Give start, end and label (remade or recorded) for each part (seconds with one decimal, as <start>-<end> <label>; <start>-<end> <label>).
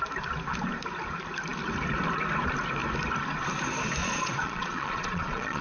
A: 0.0-4.0 recorded; 4.0-5.6 remade